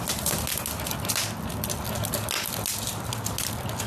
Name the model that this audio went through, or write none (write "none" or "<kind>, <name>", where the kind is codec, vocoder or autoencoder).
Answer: none